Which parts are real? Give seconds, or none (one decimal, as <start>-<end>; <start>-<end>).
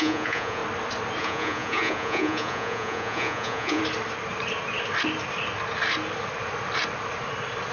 0.6-1.2; 3.8-7.7